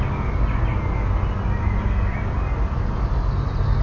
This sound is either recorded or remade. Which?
recorded